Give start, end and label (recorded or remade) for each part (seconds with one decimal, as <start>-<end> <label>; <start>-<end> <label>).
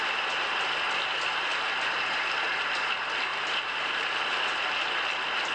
0.0-3.3 recorded; 3.3-4.9 remade; 4.9-5.5 recorded